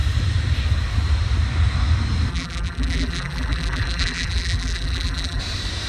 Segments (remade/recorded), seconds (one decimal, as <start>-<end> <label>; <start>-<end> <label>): 0.0-2.3 recorded; 2.3-5.4 remade; 5.4-5.9 recorded